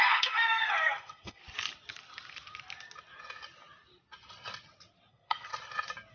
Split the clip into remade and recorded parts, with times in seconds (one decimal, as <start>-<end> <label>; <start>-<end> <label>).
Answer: 0.0-1.4 remade; 1.4-5.1 recorded; 5.1-5.5 remade; 5.5-6.1 recorded